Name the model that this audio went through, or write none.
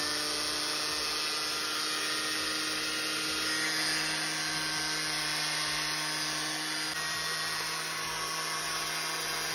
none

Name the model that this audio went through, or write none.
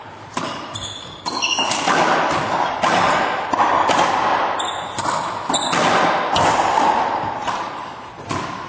none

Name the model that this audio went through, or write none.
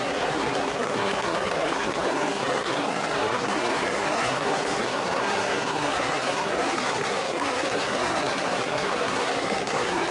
codec, SNAC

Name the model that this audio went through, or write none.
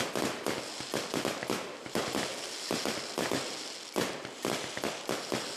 none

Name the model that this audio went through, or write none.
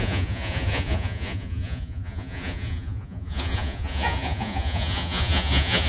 vocoder, Vocos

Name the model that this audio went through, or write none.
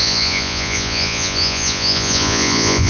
vocoder, Vocos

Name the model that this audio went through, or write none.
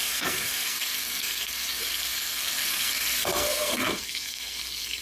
codec, SNAC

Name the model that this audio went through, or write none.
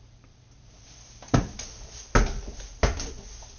none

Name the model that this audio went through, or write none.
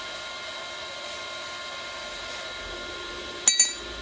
none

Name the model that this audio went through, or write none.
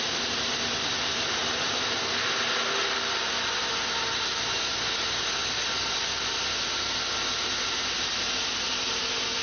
none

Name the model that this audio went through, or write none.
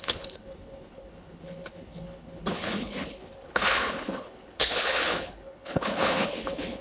codec, HILCodec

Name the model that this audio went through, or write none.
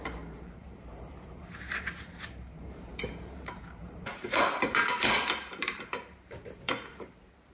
vocoder, BigVGAN v2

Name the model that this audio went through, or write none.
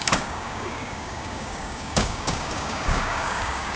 codec, DAC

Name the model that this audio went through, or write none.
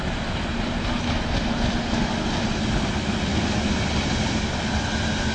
none